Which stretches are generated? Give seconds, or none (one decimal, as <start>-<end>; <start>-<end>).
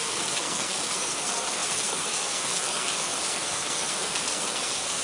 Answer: 0.0-5.0